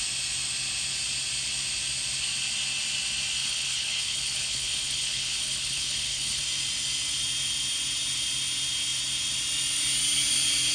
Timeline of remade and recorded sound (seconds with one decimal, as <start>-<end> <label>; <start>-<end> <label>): 0.0-3.4 recorded; 3.4-6.4 remade; 6.4-10.7 recorded